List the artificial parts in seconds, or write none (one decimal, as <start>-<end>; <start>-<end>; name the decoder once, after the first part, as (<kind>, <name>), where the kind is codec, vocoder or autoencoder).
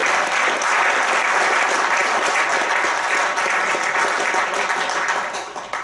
none